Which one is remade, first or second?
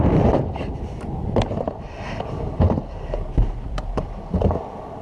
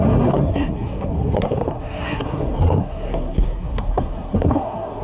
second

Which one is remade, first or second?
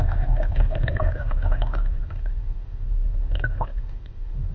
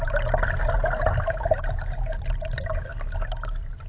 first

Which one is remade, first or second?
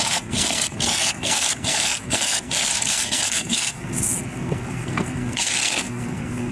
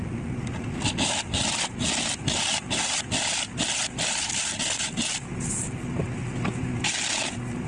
first